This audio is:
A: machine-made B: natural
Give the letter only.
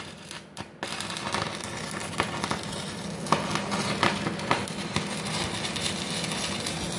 B